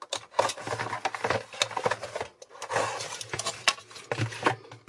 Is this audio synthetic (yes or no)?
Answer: no